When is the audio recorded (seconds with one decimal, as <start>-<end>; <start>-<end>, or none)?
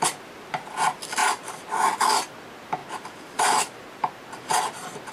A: 0.0-1.2; 1.7-2.8; 4.1-5.1